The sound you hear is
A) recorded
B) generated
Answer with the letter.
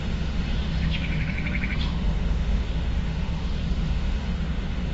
B